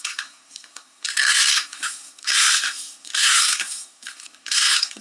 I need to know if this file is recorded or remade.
remade